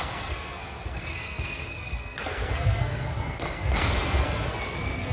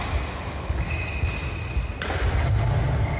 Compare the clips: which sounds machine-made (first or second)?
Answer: first